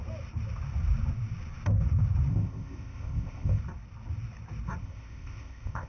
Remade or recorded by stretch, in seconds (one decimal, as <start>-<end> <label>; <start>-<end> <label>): 0.0-2.3 recorded; 2.3-3.6 remade; 3.6-4.8 recorded; 4.8-5.9 remade